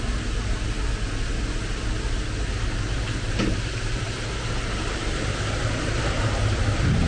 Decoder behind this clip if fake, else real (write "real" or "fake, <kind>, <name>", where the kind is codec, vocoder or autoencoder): real